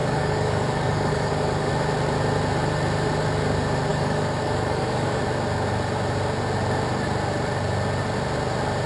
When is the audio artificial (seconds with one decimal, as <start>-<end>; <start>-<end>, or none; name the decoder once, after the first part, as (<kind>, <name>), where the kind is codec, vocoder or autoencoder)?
0.0-1.7 (codec, DAC); 3.9-5.2